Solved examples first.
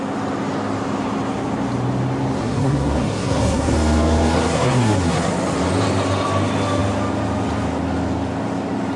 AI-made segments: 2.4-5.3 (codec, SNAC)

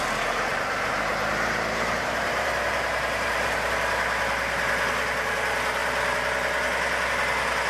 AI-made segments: 0.5-3.7 (vocoder, BigVGAN v2)

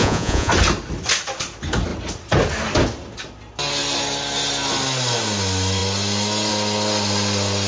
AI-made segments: 0.0-0.5 (vocoder, Vocos)

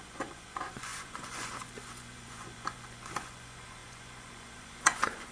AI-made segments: 0.0-5.3 (vocoder, Vocos)